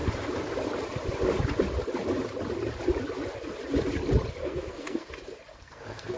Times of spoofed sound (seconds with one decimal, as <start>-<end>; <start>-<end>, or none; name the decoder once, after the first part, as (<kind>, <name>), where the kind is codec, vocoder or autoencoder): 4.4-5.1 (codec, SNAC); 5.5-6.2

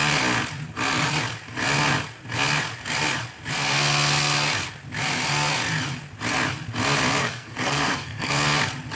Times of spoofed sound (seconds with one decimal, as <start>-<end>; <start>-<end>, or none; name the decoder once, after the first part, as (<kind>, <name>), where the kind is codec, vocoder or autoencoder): 7.2-8.3 (codec, SNAC)

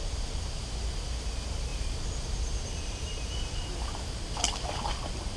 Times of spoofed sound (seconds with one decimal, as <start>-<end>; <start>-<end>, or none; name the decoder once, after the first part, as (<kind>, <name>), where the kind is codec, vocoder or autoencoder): none